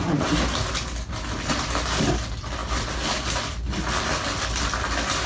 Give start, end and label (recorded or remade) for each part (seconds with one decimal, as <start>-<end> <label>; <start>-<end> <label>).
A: 0.0-5.3 recorded